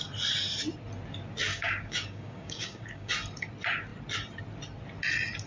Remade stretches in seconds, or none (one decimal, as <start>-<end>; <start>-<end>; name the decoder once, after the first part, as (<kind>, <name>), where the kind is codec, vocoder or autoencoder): 1.5-3.1 (codec, DAC)